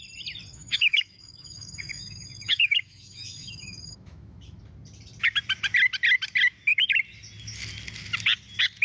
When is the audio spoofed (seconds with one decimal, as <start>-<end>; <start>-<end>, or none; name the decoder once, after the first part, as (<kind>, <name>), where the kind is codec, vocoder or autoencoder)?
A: 0.5-4.6 (autoencoder, DAC-VAE)